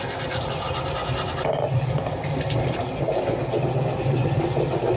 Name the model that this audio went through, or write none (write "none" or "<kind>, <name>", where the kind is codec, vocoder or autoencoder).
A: none